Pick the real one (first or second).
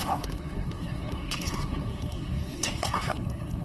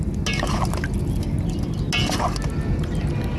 second